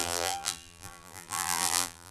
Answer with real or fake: fake